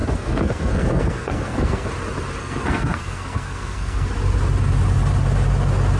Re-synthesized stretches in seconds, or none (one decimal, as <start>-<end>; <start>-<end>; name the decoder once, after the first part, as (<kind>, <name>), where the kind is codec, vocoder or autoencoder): 0.0-1.9 (codec, SNAC); 2.4-4.1